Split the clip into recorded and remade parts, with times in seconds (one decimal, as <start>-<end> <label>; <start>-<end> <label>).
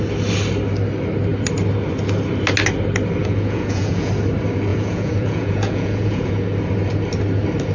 0.0-3.2 recorded; 3.2-4.1 remade; 4.1-4.7 recorded; 4.7-6.3 remade; 6.3-7.7 recorded